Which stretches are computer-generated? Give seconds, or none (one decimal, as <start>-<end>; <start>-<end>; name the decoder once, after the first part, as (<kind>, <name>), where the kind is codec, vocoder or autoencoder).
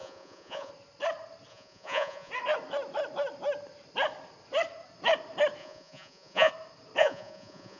0.0-0.7 (vocoder, Vocos); 1.5-2.3; 5.6-6.5; 7.0-7.8